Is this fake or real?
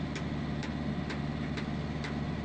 real